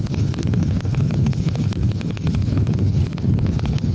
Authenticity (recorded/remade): remade